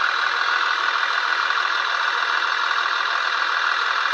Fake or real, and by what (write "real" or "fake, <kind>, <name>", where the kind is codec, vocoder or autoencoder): real